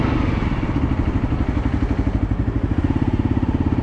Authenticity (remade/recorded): recorded